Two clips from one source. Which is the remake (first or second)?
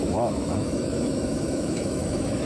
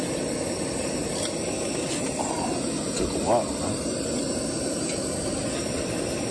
first